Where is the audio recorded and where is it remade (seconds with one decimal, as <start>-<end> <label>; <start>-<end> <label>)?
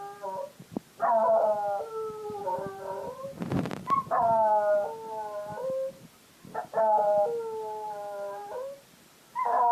0.0-2.4 recorded; 2.4-4.2 remade; 4.2-9.7 recorded